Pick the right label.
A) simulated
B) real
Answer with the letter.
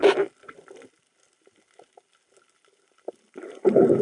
B